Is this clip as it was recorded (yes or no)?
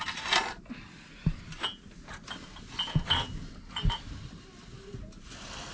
yes